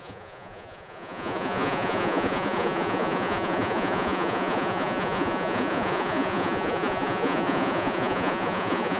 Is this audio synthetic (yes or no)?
yes